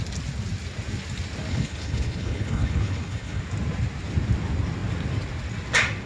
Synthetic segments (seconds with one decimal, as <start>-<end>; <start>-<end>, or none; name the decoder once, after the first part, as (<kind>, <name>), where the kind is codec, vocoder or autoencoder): 1.5-3.4 (codec, HILCodec)